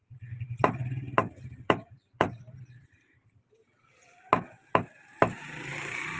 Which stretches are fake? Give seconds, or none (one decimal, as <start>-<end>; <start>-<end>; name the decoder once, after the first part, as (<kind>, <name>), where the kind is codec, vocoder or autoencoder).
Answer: 0.0-3.5 (vocoder, BigVGAN v2)